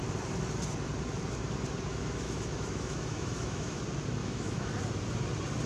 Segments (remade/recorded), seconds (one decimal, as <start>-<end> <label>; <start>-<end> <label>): 0.0-1.9 recorded; 1.9-3.8 remade; 3.8-4.2 recorded; 4.2-4.7 remade; 4.7-5.7 recorded